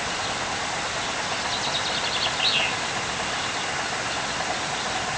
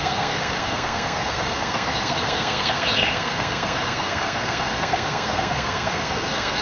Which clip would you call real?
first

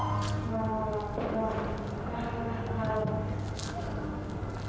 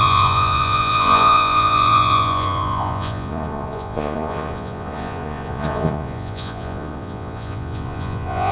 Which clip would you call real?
first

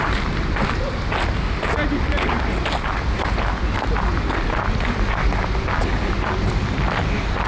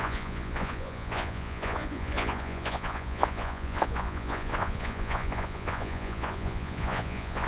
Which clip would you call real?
first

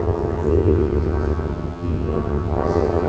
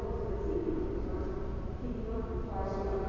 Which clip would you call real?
second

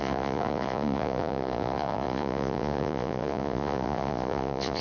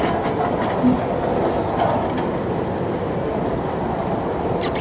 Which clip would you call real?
second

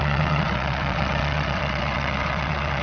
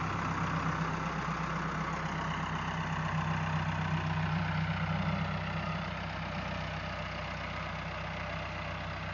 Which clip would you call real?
second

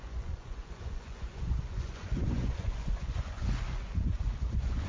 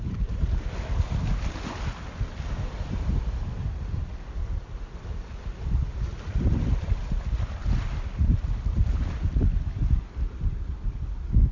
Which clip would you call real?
second